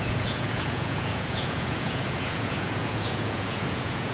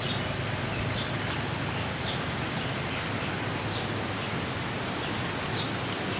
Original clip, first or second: second